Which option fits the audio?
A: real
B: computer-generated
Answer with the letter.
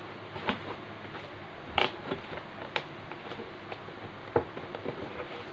A